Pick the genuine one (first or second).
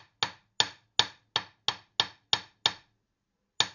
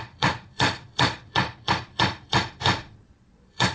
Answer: first